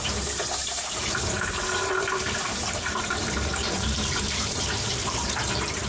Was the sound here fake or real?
fake